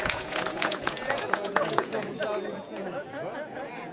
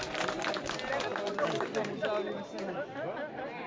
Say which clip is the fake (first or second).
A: first